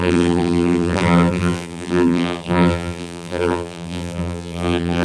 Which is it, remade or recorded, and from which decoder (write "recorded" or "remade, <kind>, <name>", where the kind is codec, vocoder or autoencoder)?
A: remade, vocoder, BigVGAN v2